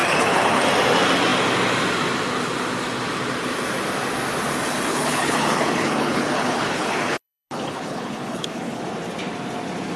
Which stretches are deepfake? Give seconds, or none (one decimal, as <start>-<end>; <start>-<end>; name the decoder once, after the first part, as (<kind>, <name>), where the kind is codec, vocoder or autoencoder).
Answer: 0.0-0.6 (codec, HILCodec); 4.9-8.8